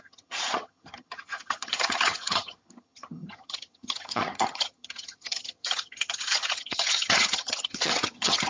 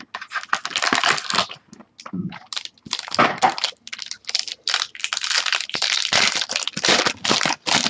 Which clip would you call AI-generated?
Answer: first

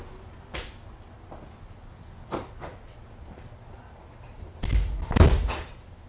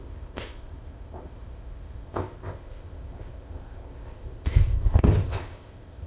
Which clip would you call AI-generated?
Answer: second